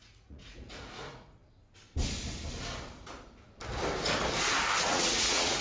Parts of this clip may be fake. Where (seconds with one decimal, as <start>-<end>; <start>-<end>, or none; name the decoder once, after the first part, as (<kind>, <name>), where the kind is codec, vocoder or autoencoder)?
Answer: 0.0-1.4 (vocoder, Vocos); 4.8-5.6

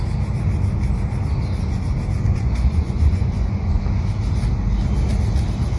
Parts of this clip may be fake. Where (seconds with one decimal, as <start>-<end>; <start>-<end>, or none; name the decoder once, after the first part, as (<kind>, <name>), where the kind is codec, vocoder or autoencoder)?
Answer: 2.3-3.8 (vocoder, Vocos)

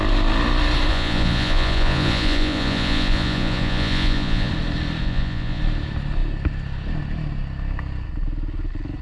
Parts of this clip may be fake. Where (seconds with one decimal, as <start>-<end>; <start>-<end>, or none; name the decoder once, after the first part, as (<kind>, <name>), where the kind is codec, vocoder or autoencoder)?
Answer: 0.9-4.5 (vocoder, Vocos); 5.0-5.6

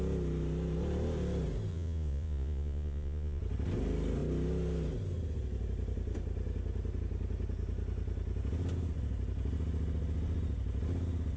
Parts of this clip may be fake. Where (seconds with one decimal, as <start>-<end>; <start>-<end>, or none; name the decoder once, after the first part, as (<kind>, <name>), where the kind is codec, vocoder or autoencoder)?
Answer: 1.7-3.4 (vocoder, Vocos)

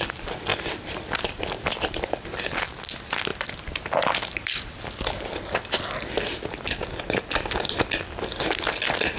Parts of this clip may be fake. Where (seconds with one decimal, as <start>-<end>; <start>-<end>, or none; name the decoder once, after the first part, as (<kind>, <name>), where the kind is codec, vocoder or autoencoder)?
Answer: none